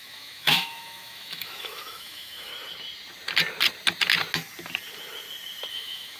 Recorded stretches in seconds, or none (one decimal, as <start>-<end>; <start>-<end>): 2.5-5.7